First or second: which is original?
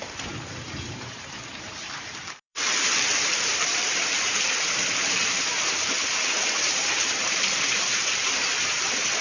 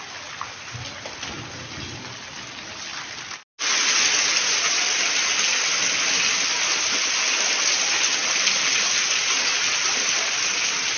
second